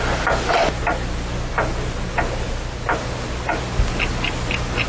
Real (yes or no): yes